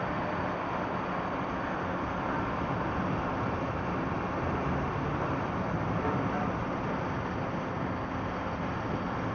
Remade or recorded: recorded